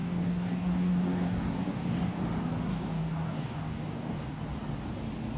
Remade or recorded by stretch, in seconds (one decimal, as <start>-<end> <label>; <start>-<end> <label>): 0.0-2.2 remade; 2.2-2.7 recorded; 2.7-4.4 remade; 4.4-5.4 recorded